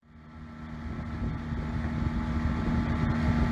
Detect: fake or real real